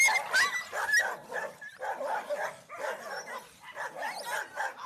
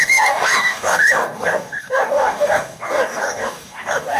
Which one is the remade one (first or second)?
second